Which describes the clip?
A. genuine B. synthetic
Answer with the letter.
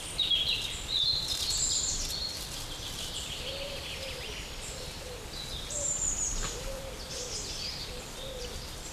B